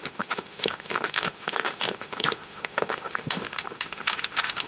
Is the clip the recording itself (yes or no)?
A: no